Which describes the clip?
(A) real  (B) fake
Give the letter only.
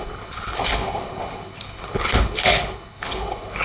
B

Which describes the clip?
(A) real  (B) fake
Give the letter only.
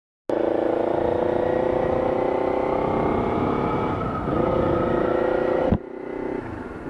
A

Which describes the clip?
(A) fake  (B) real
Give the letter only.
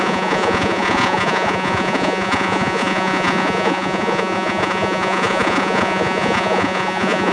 A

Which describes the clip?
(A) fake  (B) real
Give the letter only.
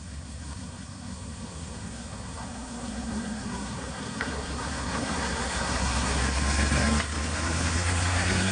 A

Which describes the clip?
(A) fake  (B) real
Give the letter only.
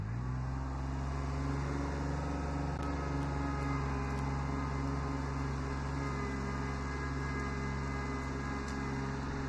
B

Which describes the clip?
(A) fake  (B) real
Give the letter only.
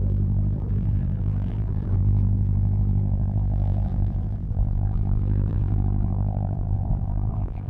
A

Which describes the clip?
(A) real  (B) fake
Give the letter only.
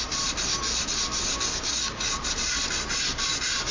A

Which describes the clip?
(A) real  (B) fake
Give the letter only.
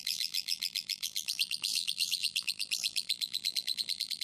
B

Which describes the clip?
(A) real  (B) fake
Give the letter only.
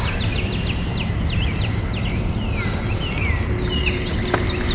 A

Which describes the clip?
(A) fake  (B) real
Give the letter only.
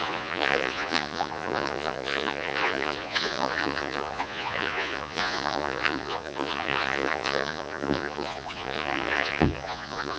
A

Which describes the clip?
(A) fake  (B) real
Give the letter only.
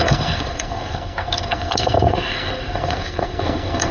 A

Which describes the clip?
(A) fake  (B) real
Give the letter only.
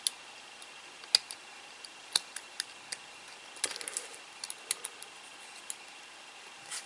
B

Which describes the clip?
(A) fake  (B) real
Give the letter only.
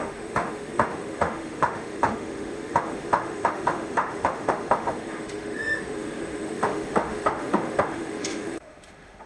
A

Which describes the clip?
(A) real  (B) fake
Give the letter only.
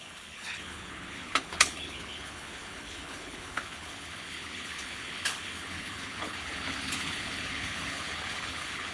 B